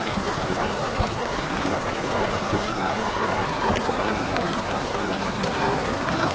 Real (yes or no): no